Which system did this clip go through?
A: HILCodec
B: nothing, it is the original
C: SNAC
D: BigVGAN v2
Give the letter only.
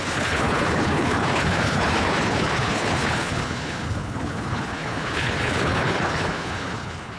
A